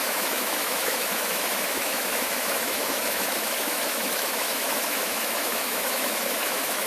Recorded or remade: remade